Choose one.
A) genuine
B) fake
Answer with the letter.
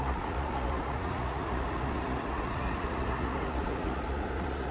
B